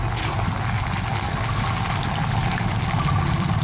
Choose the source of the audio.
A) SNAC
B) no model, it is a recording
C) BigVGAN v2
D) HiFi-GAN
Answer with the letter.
B